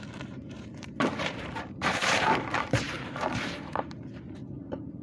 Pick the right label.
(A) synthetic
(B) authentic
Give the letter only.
A